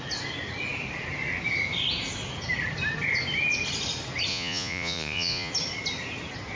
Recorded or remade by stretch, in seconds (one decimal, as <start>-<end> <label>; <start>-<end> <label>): 0.0-4.3 recorded; 4.3-5.5 remade; 5.5-6.6 recorded